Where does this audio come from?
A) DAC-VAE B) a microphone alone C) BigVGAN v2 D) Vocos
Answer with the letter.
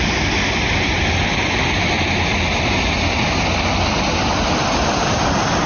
B